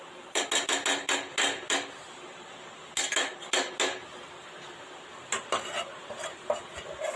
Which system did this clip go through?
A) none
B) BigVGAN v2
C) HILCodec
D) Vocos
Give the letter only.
A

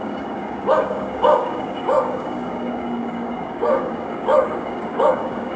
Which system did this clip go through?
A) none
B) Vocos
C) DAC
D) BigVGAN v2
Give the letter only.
C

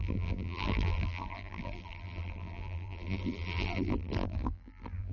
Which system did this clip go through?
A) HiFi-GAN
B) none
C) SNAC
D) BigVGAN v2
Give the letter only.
D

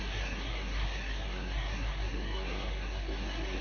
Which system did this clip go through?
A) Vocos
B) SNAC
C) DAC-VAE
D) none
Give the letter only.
B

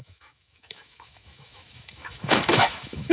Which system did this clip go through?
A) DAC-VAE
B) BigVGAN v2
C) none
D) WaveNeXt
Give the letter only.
A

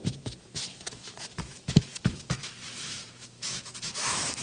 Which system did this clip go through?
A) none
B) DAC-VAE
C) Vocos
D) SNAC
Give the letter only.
B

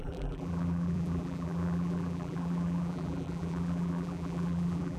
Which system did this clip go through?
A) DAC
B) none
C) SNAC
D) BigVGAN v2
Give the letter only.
D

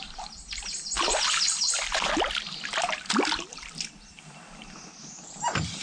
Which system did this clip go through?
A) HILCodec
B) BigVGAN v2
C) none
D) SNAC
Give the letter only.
C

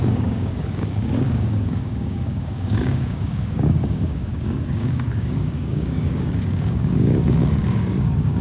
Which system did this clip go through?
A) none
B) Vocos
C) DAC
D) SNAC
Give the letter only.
C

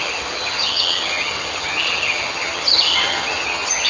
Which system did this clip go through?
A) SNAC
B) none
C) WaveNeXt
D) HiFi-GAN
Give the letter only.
D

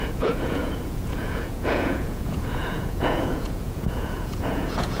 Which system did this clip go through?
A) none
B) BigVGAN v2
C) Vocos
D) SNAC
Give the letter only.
C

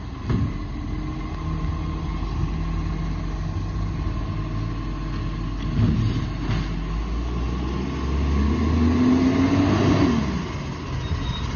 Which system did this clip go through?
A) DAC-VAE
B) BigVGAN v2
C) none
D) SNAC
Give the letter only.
C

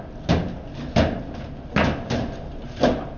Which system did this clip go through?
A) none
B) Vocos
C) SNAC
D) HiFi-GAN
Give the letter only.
A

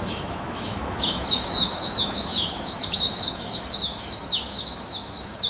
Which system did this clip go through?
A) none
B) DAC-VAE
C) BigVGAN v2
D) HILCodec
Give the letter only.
B